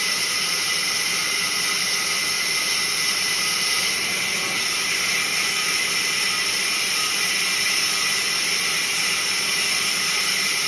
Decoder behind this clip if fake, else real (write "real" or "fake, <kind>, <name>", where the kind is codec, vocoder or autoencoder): real